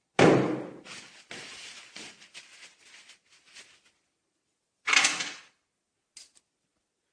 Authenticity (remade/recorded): recorded